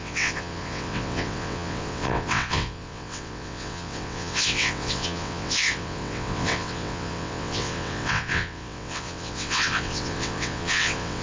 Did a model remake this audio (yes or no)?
yes